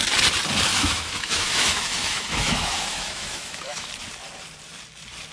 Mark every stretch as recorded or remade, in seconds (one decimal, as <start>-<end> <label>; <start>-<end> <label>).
0.0-0.7 recorded; 0.7-3.9 remade; 3.9-5.3 recorded